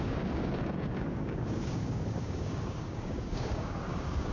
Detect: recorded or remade remade